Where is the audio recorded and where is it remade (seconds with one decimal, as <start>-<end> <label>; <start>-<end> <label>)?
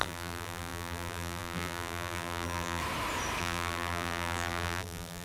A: 0.0-2.8 remade; 2.8-3.4 recorded; 3.4-5.2 remade